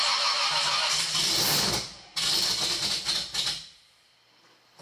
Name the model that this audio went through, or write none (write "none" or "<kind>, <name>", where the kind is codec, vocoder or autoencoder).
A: none